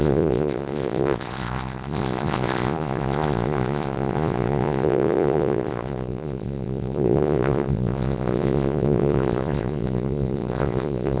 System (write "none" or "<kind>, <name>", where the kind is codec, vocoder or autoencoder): vocoder, Vocos